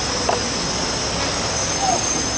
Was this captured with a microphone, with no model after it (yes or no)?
yes